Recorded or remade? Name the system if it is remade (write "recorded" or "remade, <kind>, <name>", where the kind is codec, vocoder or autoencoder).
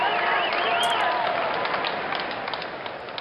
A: recorded